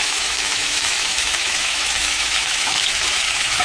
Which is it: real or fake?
fake